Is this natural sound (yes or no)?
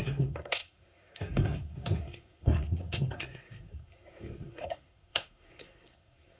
no